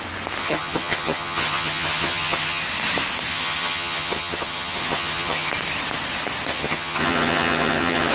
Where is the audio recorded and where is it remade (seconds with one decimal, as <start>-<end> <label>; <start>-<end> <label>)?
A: 0.0-0.4 recorded; 0.4-2.6 remade; 2.6-3.3 recorded; 3.3-5.5 remade; 5.5-6.5 recorded; 6.5-8.1 remade